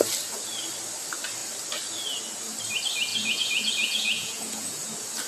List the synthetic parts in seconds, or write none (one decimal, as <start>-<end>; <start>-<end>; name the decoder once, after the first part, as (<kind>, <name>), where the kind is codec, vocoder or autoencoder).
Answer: 3.1-4.8 (vocoder, Vocos)